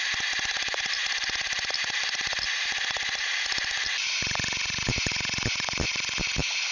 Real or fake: real